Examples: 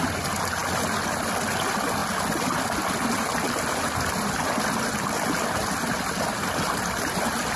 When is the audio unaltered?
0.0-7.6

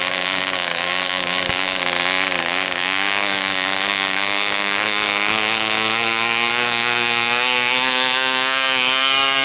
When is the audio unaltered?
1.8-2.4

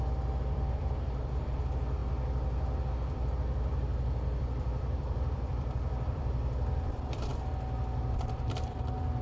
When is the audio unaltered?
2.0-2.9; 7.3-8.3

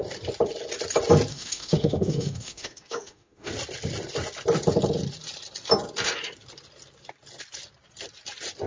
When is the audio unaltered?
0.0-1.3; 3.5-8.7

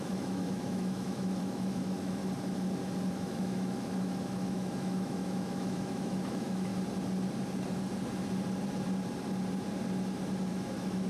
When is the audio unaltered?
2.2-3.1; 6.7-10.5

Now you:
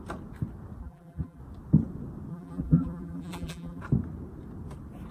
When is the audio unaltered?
0.0-0.8; 1.4-2.3; 3.8-5.1

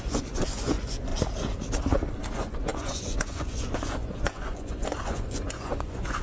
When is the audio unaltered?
1.1-2.3

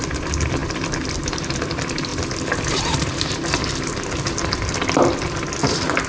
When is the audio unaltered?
0.0-6.1